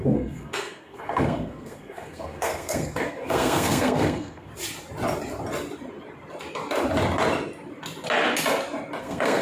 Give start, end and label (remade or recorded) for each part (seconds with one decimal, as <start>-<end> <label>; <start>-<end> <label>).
0.0-4.5 remade; 4.5-9.0 recorded; 9.0-9.4 remade

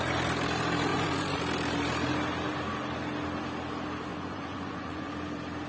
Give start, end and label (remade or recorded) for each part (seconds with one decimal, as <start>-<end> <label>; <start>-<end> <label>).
0.0-0.9 recorded; 0.9-1.4 remade; 1.4-4.1 recorded; 4.1-5.1 remade; 5.1-5.7 recorded

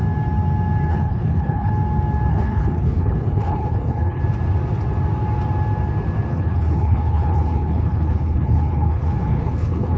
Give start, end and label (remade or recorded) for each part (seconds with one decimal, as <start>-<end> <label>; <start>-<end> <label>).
0.0-0.9 recorded; 0.9-1.7 remade; 1.7-2.3 recorded; 2.3-4.2 remade; 4.2-6.3 recorded; 6.3-10.0 remade

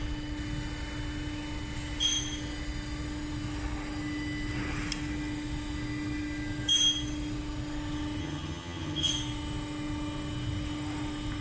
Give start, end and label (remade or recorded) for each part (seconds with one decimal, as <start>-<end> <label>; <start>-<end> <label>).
0.0-8.2 recorded; 8.2-9.1 remade; 9.1-11.4 recorded

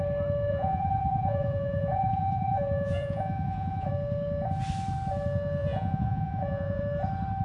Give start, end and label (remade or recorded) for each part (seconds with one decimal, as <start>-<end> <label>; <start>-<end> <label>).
0.0-0.5 recorded; 0.5-3.9 remade; 3.9-5.6 recorded; 5.6-6.8 remade; 6.8-7.4 recorded

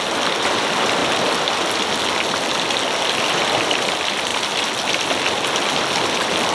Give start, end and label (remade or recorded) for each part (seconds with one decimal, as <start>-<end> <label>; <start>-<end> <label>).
0.0-6.5 recorded